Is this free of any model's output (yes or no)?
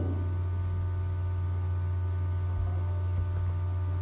yes